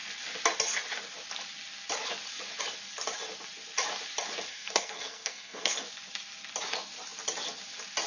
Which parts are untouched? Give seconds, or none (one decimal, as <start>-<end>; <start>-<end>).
0.0-4.5; 5.8-8.1